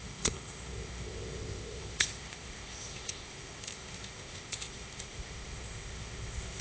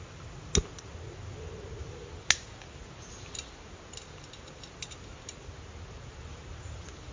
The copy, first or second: first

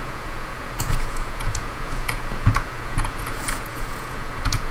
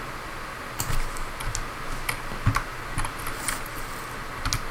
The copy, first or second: first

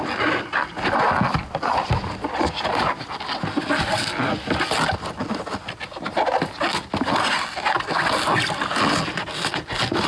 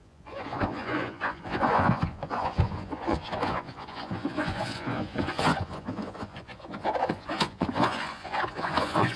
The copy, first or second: second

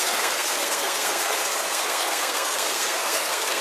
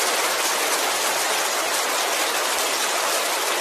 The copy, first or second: first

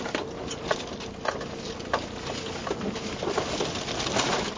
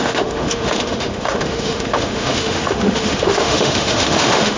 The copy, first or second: second